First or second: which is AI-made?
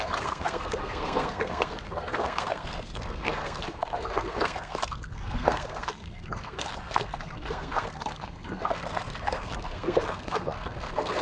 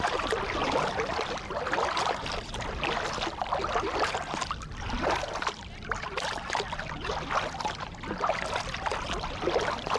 first